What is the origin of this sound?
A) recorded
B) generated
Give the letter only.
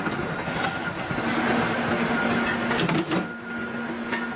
A